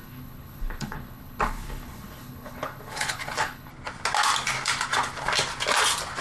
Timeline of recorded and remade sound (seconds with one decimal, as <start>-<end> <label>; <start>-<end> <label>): 0.0-3.7 remade; 3.7-6.2 recorded